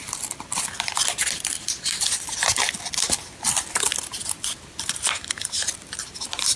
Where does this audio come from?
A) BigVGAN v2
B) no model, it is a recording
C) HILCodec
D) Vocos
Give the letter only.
A